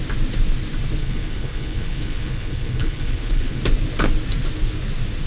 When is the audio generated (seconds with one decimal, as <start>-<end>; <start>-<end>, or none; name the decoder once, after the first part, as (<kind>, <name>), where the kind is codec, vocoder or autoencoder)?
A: 1.0-3.6 (codec, HILCodec)